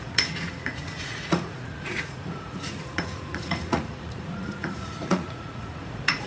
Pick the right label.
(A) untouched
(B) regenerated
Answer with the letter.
B